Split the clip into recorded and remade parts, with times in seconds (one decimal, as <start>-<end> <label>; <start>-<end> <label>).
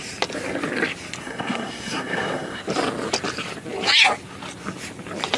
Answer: 0.0-1.2 recorded; 1.2-2.6 remade; 2.6-5.4 recorded